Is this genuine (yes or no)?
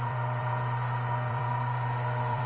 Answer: no